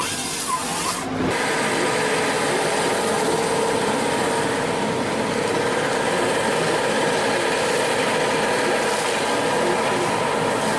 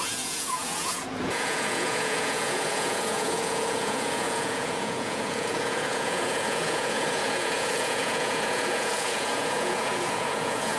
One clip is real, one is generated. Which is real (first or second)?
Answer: first